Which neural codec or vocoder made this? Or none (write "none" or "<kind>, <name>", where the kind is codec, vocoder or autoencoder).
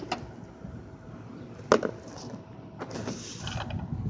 none